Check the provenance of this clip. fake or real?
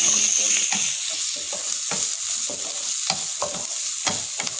real